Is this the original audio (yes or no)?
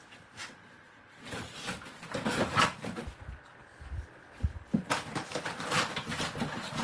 yes